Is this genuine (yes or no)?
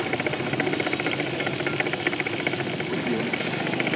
yes